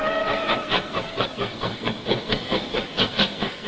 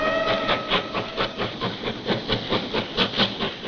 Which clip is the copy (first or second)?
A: first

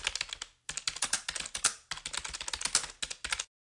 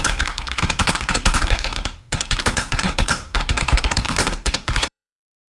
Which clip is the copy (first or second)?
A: second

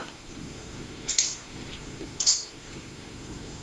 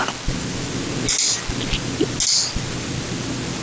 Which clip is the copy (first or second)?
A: first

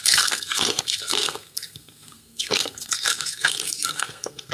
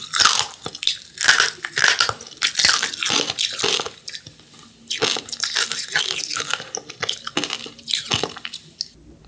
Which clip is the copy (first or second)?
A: first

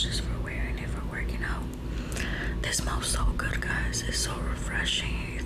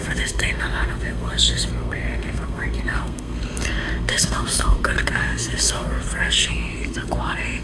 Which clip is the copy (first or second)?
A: second